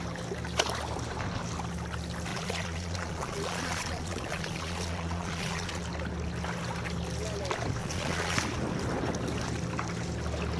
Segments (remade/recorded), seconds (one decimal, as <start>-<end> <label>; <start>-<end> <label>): 0.0-2.3 recorded; 2.3-5.8 remade; 5.8-7.8 recorded; 7.8-8.4 remade; 8.4-10.6 recorded

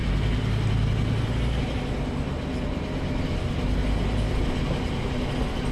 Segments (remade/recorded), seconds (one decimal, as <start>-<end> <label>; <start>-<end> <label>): 0.0-5.7 recorded

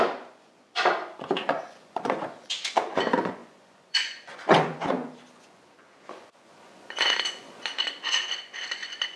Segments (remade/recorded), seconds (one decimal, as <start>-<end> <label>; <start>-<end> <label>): 0.0-9.2 remade

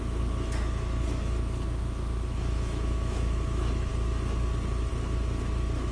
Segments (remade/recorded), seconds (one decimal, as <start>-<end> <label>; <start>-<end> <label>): 0.0-3.9 remade; 3.9-4.9 recorded; 4.9-5.9 remade